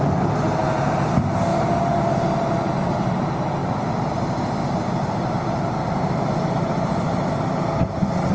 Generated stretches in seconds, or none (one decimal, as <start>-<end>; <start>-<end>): 0.6-1.1; 1.5-2.5; 4.6-7.4